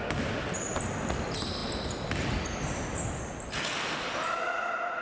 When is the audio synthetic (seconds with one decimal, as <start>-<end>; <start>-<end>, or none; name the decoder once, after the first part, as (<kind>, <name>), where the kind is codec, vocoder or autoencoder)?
none